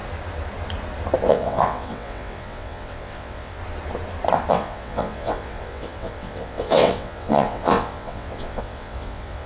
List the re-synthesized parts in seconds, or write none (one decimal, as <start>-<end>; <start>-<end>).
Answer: 1.3-3.6; 4.5-9.5